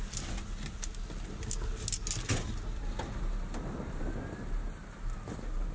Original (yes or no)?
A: yes